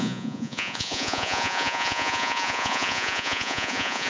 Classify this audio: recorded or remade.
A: remade